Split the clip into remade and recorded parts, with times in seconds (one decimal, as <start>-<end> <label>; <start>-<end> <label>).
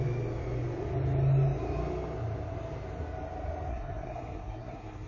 0.0-3.7 recorded; 3.7-5.1 remade